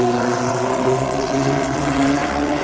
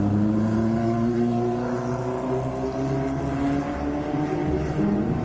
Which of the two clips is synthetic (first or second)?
first